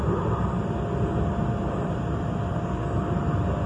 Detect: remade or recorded recorded